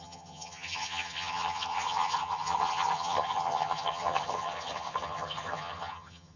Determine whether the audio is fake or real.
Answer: fake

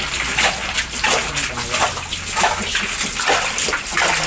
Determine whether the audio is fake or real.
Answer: real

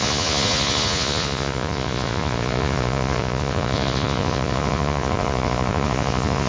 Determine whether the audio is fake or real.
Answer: fake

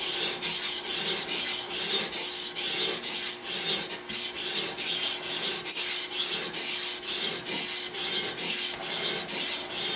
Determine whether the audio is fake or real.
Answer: real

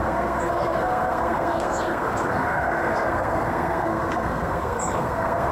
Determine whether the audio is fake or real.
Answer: fake